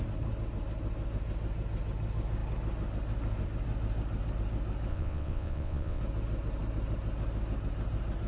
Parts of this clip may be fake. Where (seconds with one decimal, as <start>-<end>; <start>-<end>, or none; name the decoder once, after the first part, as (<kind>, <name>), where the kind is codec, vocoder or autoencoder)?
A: 4.9-6.0 (vocoder, WaveNeXt)